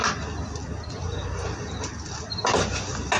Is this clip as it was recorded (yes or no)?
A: yes